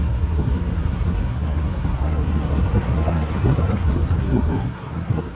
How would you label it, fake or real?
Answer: fake